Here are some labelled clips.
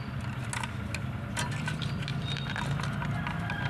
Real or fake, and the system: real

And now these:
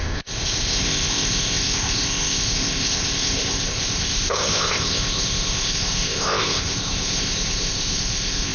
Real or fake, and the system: fake, codec, ZipCodec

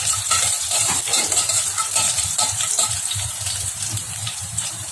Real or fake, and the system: fake, vocoder, BigVGAN v2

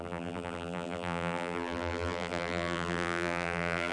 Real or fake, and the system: fake, vocoder, BigVGAN v2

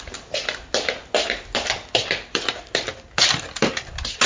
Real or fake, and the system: real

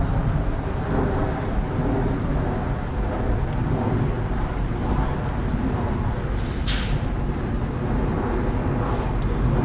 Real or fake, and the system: real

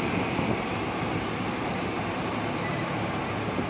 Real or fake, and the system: real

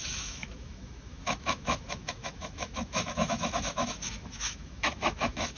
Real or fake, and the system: fake, autoencoder, DAC-VAE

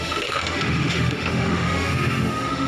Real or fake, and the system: fake, autoencoder, DAC-VAE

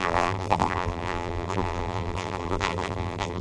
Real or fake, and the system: fake, vocoder, BigVGAN v2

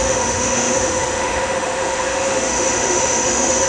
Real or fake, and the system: fake, autoencoder, DAC-VAE